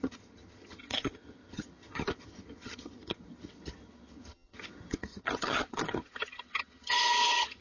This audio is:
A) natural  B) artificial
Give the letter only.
B